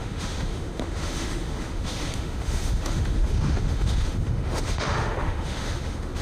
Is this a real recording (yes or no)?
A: no